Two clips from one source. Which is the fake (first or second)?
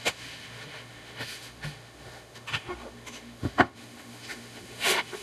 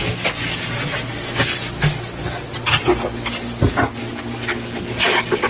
first